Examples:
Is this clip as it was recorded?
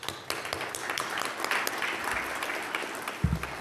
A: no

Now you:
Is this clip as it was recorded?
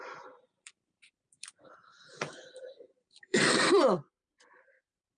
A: no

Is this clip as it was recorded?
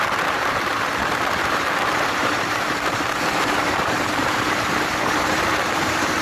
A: no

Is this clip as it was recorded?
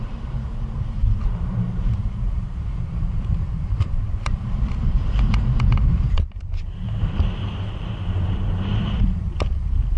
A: no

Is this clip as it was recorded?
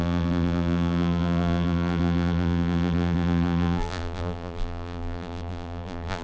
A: no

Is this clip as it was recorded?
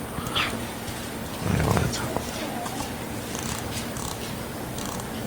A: no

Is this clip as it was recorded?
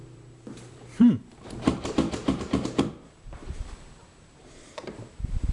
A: no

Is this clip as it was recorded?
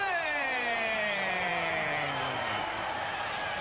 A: no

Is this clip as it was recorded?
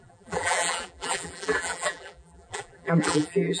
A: no